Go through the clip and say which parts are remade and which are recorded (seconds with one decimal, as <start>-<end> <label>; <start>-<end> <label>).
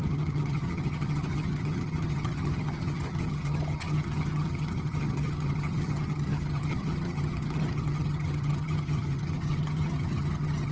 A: 0.0-10.7 remade